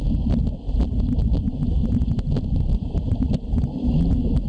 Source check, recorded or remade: recorded